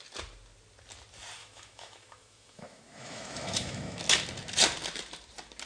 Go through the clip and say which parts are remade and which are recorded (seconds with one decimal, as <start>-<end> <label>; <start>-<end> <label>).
0.0-1.4 recorded; 1.4-4.0 remade; 4.0-5.7 recorded